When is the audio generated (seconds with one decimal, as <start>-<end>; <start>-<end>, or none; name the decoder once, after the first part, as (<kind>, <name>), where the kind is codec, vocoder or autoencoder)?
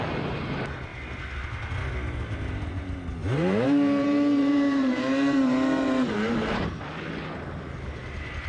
3.2-6.6 (vocoder, BigVGAN v2)